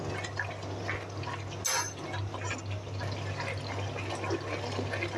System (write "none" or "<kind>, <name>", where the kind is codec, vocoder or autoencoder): none